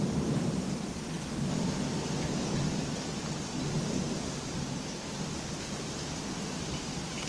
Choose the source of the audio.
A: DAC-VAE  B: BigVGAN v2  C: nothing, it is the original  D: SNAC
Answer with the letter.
C